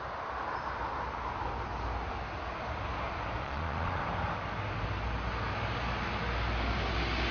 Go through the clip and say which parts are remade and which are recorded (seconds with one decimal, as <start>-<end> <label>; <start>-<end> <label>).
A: 0.0-3.4 recorded; 3.4-4.0 remade; 4.0-7.3 recorded